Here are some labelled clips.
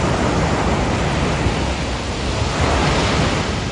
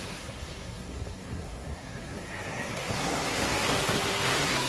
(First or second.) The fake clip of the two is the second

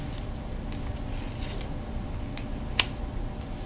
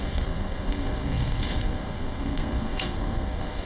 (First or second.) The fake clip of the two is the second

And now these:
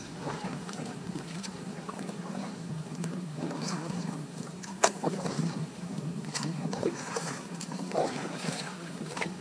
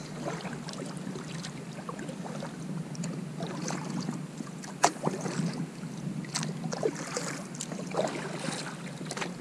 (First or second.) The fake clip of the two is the first